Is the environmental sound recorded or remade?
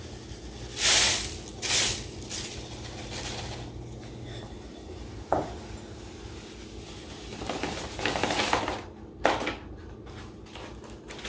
recorded